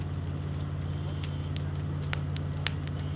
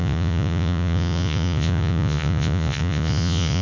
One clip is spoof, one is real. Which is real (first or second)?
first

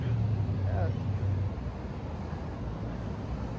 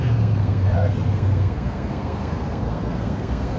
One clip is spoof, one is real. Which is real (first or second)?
first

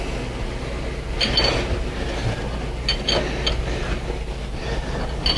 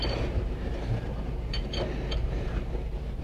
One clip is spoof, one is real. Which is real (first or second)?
first